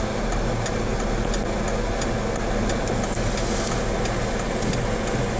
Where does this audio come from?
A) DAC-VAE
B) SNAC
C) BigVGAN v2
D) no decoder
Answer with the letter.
D